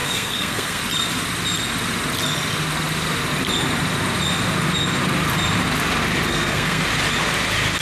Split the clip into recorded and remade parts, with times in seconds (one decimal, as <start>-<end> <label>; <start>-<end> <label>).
0.0-0.8 remade; 0.8-6.3 recorded; 6.3-6.8 remade; 6.8-7.8 recorded